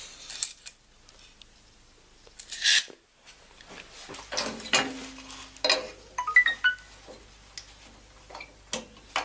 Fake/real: real